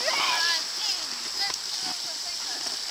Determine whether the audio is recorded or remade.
recorded